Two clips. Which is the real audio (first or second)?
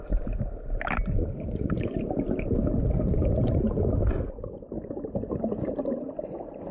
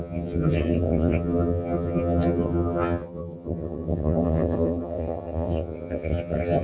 first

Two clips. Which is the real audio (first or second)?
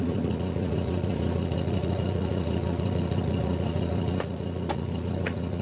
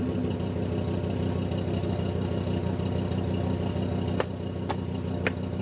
second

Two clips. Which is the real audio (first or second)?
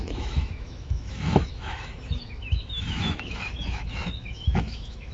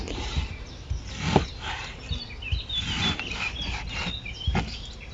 second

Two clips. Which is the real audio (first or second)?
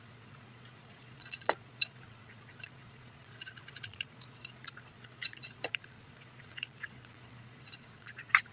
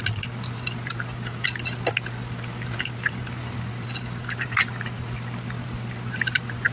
second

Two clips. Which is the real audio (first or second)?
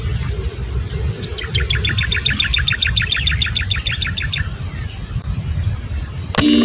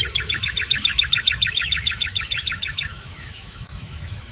first